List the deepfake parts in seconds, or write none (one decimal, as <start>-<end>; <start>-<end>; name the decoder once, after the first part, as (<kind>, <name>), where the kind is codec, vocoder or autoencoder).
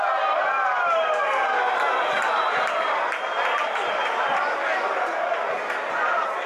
none